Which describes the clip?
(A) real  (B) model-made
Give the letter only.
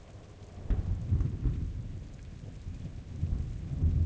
A